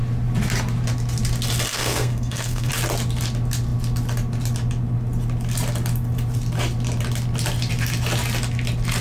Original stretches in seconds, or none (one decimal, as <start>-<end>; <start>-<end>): 0.0-1.7; 2.7-9.0